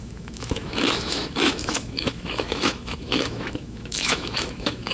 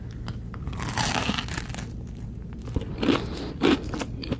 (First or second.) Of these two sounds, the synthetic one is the first